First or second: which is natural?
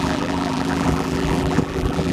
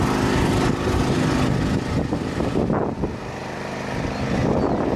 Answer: second